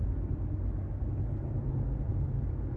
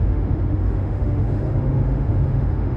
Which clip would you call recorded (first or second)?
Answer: first